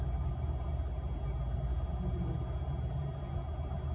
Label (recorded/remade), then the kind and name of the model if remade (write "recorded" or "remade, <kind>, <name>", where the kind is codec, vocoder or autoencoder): recorded